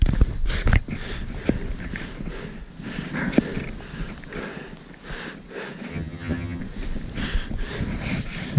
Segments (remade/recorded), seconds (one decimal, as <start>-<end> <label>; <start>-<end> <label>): 0.0-5.9 recorded; 5.9-6.6 remade; 6.6-8.6 recorded